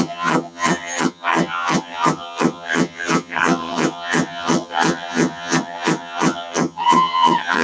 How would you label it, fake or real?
fake